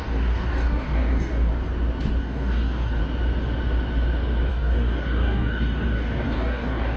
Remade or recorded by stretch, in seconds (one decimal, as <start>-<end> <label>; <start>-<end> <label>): 0.0-1.5 remade; 1.5-2.2 recorded; 2.2-3.0 remade; 3.0-4.5 recorded; 4.5-7.0 remade

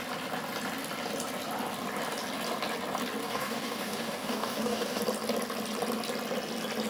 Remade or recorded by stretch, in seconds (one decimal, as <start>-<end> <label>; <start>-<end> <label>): 0.0-3.2 recorded; 3.2-5.0 remade; 5.0-6.9 recorded

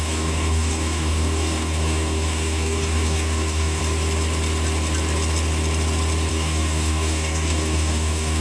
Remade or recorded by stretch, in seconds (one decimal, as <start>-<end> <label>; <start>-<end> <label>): 0.0-3.8 remade; 3.8-6.3 recorded; 6.3-8.4 remade

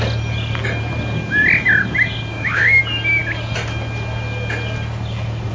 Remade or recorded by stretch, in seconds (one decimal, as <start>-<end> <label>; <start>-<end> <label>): 0.0-2.3 recorded; 2.3-2.8 remade; 2.8-5.5 recorded

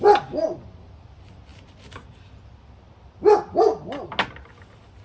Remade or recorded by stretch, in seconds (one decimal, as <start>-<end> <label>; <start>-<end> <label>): 0.0-5.0 recorded

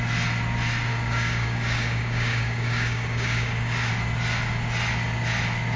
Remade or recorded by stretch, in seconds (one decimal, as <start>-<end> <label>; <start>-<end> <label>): 0.0-0.9 recorded; 0.9-3.9 remade; 3.9-5.8 recorded